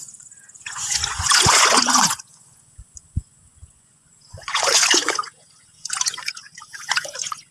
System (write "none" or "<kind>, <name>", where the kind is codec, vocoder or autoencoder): vocoder, Vocos